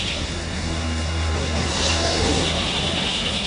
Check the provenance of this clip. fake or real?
fake